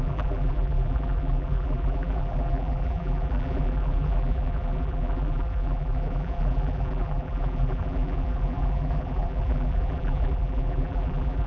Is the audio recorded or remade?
remade